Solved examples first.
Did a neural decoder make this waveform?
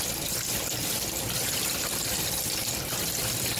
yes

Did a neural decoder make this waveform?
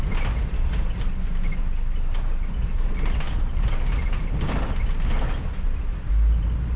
no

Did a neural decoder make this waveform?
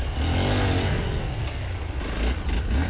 no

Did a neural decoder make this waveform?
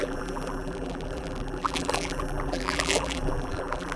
yes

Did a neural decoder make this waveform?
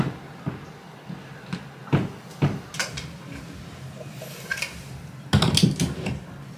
no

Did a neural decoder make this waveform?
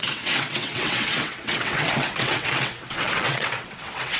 yes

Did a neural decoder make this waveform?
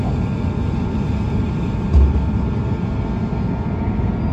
no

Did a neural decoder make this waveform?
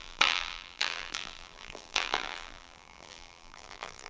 yes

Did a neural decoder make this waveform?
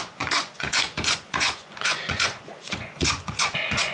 yes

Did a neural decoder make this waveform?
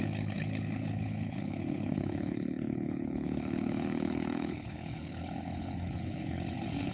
yes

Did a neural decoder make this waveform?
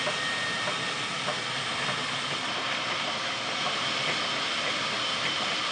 no